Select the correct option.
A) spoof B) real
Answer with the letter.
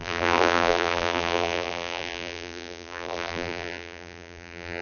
A